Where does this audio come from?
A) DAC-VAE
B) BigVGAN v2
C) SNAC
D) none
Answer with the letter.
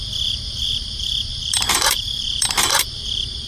B